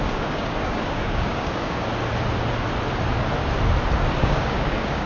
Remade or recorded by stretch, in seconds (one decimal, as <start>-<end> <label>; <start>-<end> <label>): 0.0-1.9 remade; 1.9-4.2 recorded; 4.2-5.1 remade